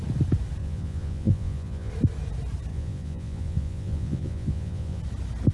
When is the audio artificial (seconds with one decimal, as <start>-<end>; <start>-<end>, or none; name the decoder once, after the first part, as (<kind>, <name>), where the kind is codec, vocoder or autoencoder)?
0.6-1.9 (vocoder, Vocos); 2.7-5.0